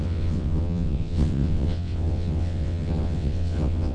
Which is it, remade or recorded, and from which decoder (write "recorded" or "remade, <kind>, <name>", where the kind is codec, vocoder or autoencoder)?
remade, vocoder, WaveNeXt